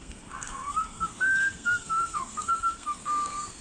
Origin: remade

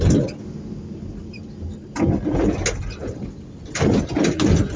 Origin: recorded